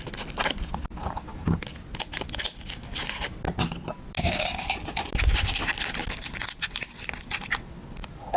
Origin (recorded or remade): recorded